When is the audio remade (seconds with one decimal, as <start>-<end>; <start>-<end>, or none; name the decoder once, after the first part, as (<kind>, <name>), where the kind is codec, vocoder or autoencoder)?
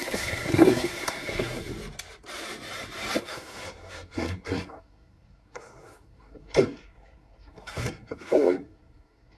0.0-1.7 (codec, SNAC); 3.2-9.4